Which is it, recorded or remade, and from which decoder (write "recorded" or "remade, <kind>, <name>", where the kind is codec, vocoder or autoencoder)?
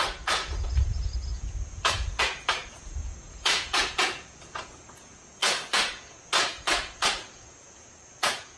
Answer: remade, vocoder, Vocos